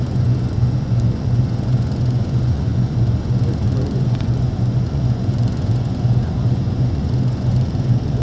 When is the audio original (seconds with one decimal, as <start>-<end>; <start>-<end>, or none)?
none